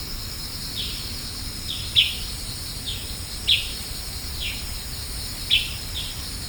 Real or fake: fake